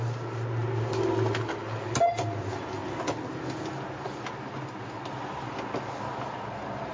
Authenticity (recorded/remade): recorded